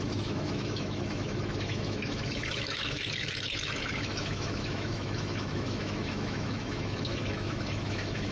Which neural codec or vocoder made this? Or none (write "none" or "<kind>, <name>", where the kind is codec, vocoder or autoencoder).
autoencoder, DAC-VAE